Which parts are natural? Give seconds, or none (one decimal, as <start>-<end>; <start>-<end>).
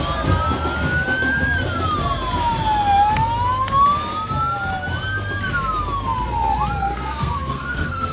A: 0.0-6.8